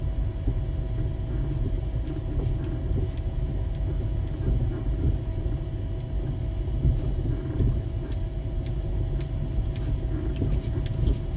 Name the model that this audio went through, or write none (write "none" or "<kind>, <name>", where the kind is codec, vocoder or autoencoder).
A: none